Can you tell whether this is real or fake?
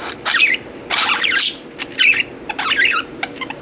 fake